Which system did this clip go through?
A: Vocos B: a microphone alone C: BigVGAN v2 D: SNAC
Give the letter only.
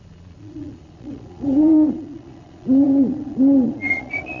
A